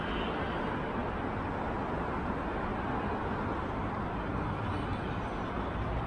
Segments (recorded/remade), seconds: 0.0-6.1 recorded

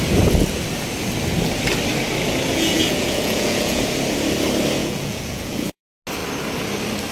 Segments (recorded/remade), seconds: 0.0-2.5 recorded; 2.5-3.8 remade; 3.8-4.8 recorded; 4.8-5.8 remade; 5.8-7.1 recorded